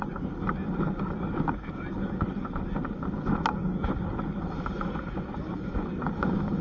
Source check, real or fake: real